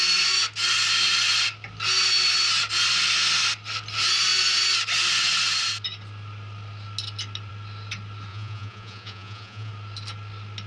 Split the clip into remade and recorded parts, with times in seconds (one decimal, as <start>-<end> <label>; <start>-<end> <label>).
0.0-8.3 recorded; 8.3-9.7 remade; 9.7-10.7 recorded